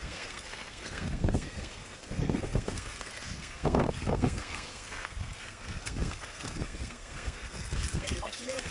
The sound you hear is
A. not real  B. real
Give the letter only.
A